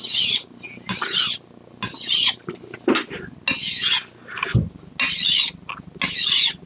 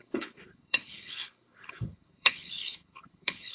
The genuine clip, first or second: first